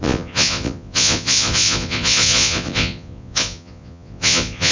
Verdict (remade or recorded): remade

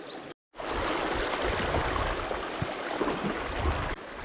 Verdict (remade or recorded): recorded